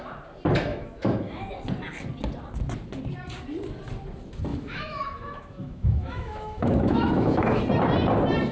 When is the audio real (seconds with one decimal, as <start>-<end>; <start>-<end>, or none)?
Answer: 0.0-0.7; 1.5-4.5; 7.6-8.5